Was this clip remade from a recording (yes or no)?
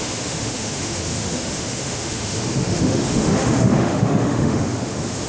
yes